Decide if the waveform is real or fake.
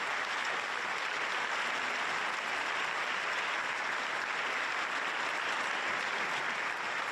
real